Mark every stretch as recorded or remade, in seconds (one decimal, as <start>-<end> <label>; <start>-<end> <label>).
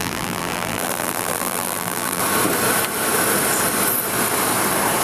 0.0-2.2 remade; 2.2-5.0 recorded